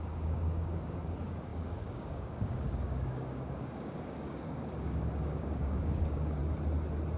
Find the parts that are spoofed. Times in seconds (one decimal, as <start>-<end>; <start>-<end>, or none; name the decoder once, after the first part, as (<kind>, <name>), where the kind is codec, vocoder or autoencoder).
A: 0.0-6.4 (codec, DAC)